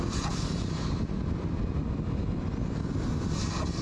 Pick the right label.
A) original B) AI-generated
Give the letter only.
A